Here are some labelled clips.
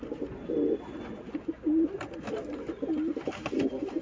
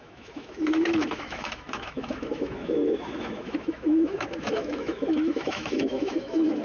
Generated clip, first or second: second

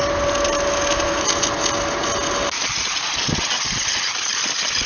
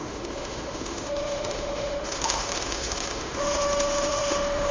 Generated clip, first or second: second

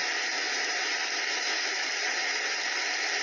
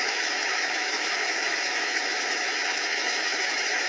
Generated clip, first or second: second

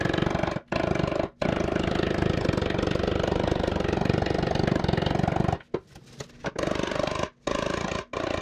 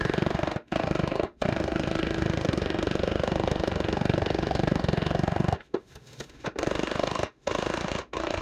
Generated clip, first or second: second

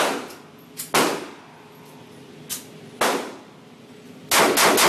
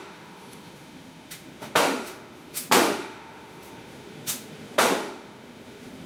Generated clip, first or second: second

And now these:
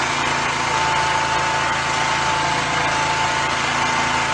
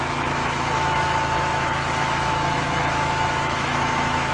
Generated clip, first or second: second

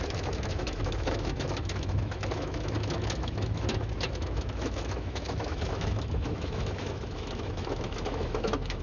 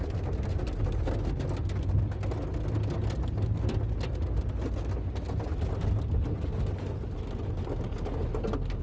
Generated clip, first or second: first